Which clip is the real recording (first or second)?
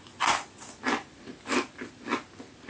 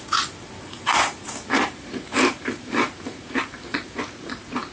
first